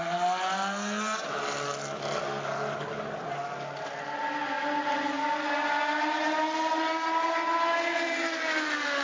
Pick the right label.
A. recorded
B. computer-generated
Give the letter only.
A